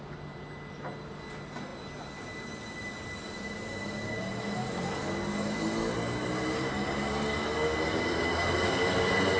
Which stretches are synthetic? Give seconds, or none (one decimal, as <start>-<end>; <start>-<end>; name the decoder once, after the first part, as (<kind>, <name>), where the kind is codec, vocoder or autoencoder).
none